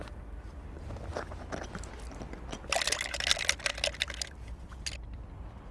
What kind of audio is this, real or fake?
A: real